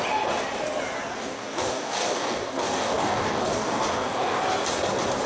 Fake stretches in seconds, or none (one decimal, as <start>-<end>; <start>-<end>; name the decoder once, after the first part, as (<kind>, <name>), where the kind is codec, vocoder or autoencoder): 1.2-4.4 (codec, DAC)